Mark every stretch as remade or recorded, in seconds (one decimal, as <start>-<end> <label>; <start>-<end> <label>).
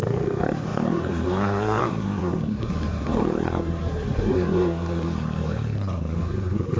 0.0-6.8 remade